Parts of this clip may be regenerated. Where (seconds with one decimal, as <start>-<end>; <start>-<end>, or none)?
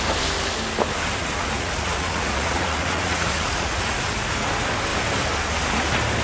1.2-4.5